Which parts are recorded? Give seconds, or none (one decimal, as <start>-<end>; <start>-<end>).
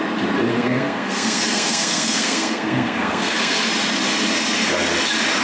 0.0-0.5; 3.7-5.4